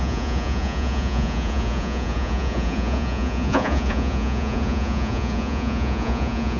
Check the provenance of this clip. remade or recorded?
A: remade